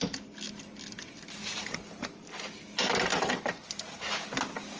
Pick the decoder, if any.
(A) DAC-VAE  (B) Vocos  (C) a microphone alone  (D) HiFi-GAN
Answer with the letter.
C